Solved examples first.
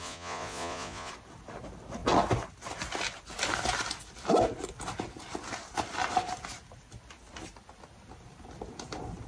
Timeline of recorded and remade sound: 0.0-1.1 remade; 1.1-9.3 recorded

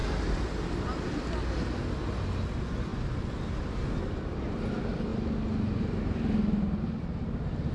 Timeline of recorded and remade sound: 0.0-0.7 remade; 0.7-7.7 recorded

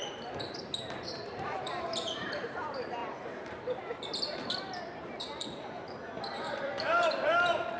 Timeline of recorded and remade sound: 0.0-7.8 remade